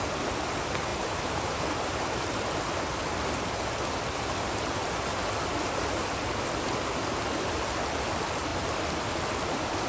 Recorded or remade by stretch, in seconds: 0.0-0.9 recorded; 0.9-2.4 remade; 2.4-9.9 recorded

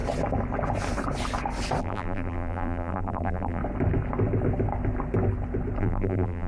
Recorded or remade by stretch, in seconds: 0.0-1.8 recorded; 1.8-3.6 remade; 3.6-5.8 recorded; 5.8-6.5 remade